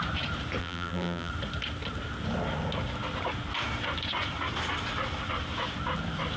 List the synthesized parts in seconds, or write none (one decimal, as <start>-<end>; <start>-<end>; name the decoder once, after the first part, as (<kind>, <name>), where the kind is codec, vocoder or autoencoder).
0.6-1.3 (vocoder, BigVGAN v2)